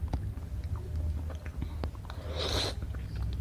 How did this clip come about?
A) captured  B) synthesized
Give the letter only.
A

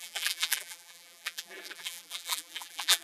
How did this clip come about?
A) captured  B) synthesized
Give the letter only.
B